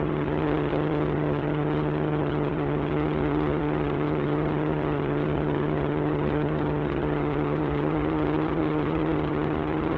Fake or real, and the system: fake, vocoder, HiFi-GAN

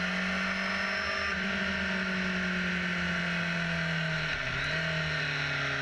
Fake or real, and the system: real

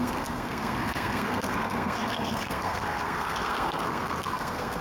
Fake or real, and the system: fake, codec, SNAC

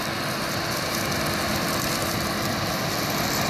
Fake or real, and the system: real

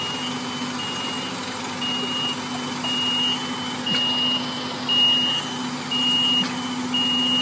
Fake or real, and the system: real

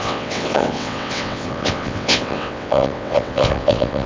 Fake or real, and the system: fake, vocoder, WaveNeXt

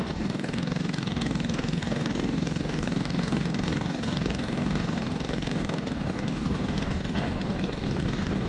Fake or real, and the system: fake, codec, DAC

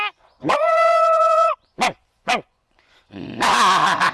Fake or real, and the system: fake, vocoder, Vocos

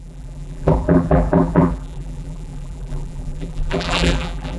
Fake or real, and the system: fake, vocoder, BigVGAN v2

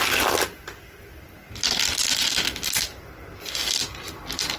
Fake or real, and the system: real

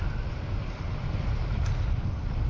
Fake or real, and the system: real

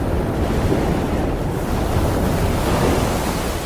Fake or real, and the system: real